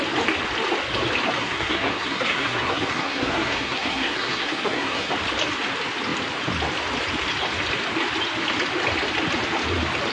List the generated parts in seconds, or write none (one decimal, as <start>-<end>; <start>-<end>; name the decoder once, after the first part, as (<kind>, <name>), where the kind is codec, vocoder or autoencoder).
1.4-5.1 (codec, SNAC)